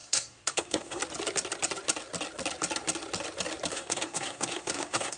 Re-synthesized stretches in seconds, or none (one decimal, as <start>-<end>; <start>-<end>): 0.0-1.0; 3.7-5.2